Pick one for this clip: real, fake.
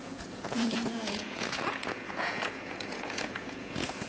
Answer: fake